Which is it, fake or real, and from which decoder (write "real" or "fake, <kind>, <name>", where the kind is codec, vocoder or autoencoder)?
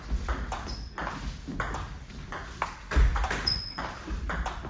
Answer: real